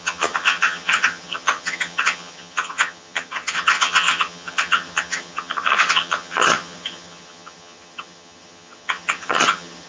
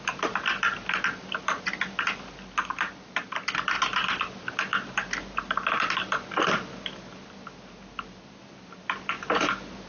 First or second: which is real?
second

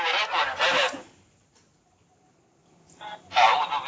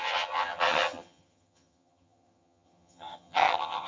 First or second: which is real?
first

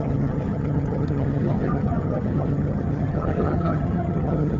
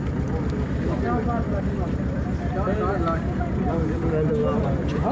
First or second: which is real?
second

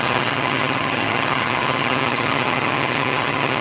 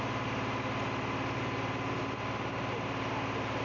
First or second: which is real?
second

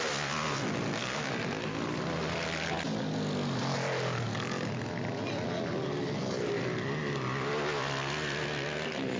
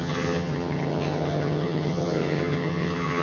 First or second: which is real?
first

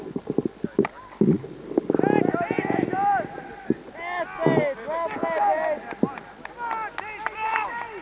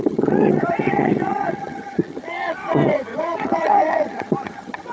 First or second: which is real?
first